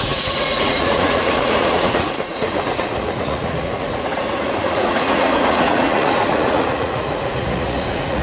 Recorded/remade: remade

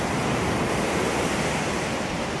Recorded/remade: recorded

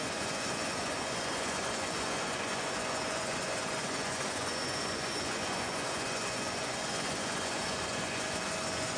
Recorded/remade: remade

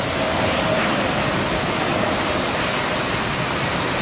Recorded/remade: recorded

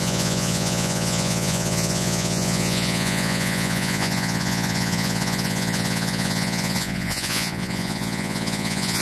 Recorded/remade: remade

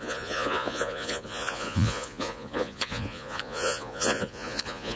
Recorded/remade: remade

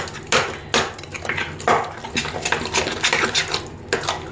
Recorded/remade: recorded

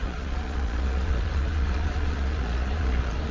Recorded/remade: remade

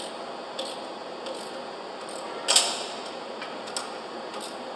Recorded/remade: recorded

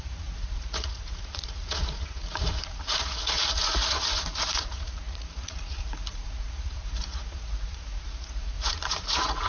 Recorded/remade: remade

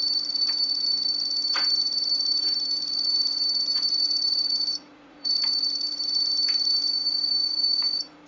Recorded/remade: remade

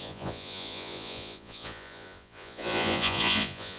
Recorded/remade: remade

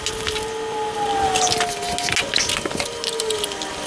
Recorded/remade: recorded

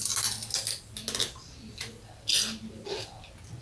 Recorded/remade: recorded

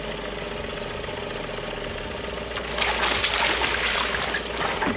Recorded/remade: recorded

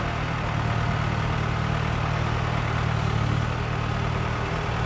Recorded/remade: recorded